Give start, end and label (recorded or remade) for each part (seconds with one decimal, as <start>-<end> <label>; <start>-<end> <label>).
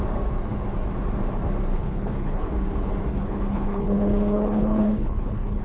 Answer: 0.0-1.7 recorded; 1.7-2.5 remade; 2.5-3.1 recorded; 3.1-5.6 remade